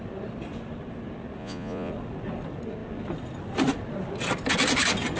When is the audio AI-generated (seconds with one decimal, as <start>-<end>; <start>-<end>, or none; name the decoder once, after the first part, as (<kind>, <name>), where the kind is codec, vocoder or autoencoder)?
1.4-1.9 (vocoder, Vocos)